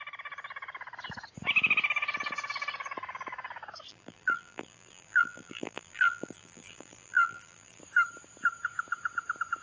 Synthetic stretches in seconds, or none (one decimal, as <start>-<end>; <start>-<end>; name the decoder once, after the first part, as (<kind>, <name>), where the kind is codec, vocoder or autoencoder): 3.9-7.8 (vocoder, BigVGAN v2)